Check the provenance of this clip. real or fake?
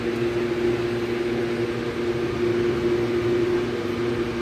real